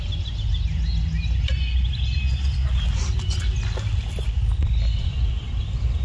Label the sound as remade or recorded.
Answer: recorded